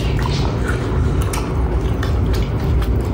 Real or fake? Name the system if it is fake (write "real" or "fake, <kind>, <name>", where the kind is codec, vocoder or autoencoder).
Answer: real